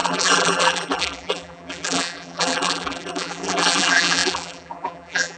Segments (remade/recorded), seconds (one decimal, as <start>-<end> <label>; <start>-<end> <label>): 0.0-5.4 remade